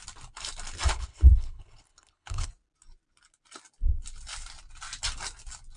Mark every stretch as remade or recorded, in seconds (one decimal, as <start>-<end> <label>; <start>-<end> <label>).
0.0-0.9 recorded; 0.9-2.5 remade; 2.5-5.8 recorded